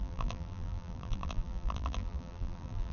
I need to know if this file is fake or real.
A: fake